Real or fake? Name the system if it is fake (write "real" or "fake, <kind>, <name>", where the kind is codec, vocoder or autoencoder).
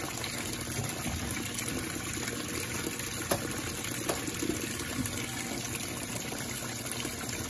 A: real